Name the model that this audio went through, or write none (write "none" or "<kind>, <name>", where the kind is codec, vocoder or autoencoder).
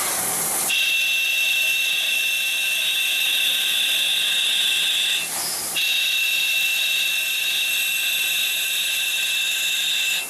none